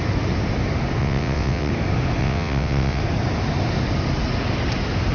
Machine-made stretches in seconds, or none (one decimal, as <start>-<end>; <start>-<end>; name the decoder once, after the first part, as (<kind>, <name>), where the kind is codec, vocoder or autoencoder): 1.0-1.7 (vocoder, WaveNeXt); 2.2-3.0